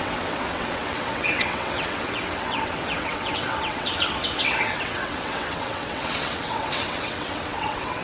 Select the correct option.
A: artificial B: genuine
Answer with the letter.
A